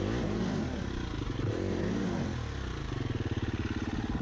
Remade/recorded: recorded